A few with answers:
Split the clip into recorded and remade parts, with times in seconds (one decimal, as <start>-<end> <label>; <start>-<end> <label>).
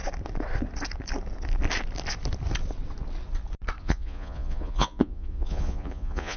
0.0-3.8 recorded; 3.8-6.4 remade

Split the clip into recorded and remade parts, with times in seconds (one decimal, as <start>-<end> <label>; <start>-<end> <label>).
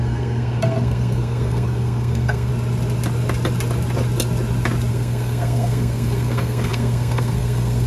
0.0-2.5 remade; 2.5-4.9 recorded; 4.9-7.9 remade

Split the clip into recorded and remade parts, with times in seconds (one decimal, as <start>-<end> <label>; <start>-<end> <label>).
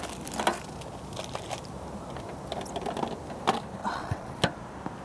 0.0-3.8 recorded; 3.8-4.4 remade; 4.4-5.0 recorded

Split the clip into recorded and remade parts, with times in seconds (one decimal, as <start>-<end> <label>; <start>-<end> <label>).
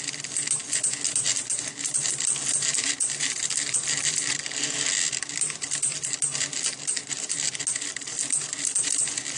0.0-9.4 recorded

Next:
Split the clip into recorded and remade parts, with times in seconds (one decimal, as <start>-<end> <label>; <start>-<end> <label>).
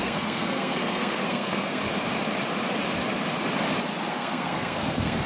0.0-1.8 remade; 1.8-4.1 recorded; 4.1-5.3 remade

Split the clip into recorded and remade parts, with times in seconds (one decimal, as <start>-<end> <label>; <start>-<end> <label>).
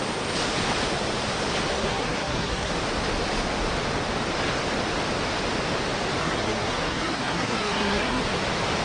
0.0-1.7 recorded; 1.7-2.7 remade; 2.7-6.2 recorded; 6.2-8.2 remade; 8.2-8.8 recorded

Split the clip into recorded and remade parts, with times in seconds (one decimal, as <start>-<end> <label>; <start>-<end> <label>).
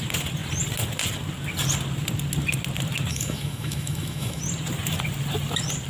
0.0-3.1 recorded; 3.1-4.4 remade; 4.4-5.9 recorded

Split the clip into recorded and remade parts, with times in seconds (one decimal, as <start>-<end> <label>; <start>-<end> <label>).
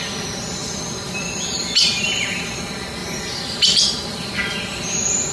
0.0-5.3 recorded